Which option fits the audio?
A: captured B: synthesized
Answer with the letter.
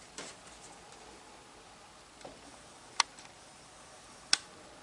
A